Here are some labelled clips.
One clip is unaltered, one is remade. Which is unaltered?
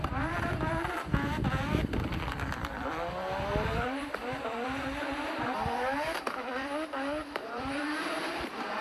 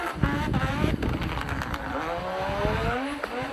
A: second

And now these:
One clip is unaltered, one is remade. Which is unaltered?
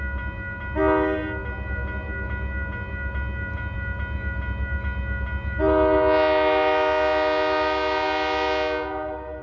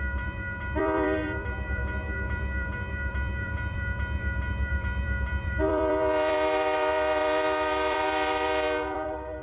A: first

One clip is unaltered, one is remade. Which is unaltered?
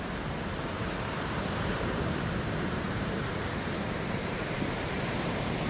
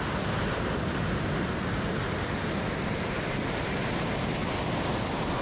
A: second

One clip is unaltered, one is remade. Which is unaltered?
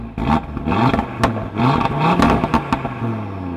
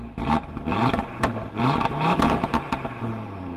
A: first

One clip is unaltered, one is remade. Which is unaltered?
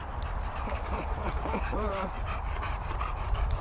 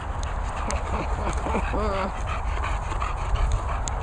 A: second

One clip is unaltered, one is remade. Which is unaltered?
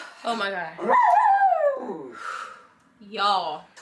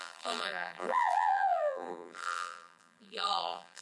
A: first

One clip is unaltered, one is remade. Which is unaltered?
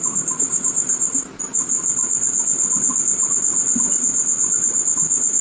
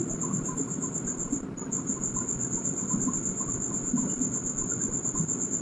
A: first